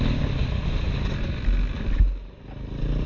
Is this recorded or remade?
recorded